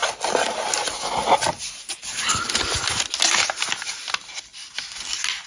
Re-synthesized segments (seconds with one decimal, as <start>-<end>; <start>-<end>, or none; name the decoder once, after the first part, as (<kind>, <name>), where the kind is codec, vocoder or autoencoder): none